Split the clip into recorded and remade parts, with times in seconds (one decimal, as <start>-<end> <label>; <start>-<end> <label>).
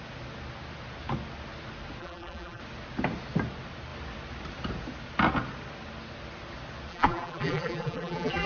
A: 0.0-2.0 recorded; 2.0-2.6 remade; 2.6-6.9 recorded; 6.9-8.5 remade